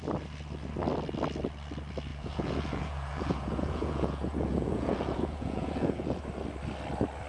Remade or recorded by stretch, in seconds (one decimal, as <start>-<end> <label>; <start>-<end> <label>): 0.0-2.1 recorded; 2.1-6.2 remade; 6.2-7.3 recorded

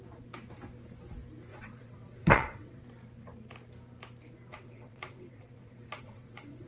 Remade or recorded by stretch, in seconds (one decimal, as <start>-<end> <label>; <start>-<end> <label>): 0.0-1.5 recorded; 1.5-2.8 remade; 2.8-4.5 recorded; 4.5-6.7 remade

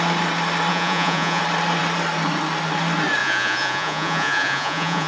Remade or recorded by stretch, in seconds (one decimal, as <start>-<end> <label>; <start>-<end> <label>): 0.0-0.7 recorded; 0.7-1.4 remade; 1.4-3.2 recorded; 3.2-5.1 remade